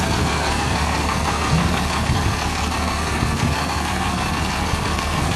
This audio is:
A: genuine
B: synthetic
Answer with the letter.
B